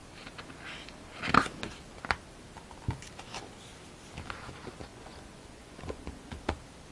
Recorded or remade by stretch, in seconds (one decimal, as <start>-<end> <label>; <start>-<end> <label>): 0.0-4.9 recorded; 4.9-6.4 remade; 6.4-6.9 recorded

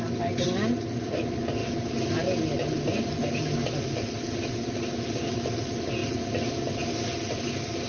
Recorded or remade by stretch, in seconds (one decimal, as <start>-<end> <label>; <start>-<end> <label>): 0.0-7.9 recorded

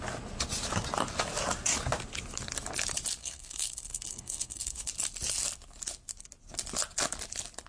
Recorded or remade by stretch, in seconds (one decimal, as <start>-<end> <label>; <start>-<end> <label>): 0.0-3.2 recorded; 3.2-4.9 remade; 4.9-7.7 recorded

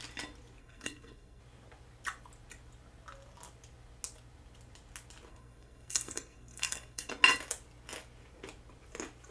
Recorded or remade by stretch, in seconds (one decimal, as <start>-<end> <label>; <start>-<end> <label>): 0.0-0.6 recorded; 0.6-1.4 remade; 1.4-5.3 recorded; 5.3-7.1 remade; 7.1-9.3 recorded